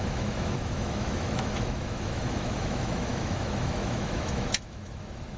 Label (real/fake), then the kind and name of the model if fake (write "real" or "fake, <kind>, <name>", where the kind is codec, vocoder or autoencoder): fake, autoencoder, DAC-VAE